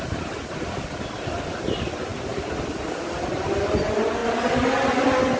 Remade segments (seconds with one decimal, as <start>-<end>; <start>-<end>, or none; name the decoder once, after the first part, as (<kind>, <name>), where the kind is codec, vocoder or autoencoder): none